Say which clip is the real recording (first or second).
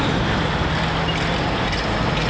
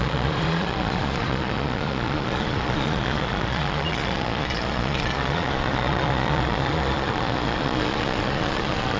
first